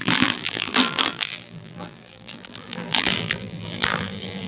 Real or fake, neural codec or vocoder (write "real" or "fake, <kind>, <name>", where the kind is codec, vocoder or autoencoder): fake, vocoder, BigVGAN v2